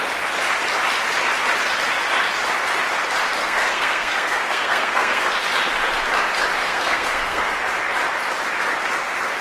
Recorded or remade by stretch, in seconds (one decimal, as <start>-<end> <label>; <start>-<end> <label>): 0.0-3.4 recorded; 3.4-5.2 remade; 5.2-6.6 recorded; 6.6-7.4 remade; 7.4-9.4 recorded